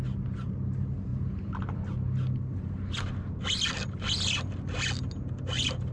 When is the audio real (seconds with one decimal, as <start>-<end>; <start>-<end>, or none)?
0.0-5.9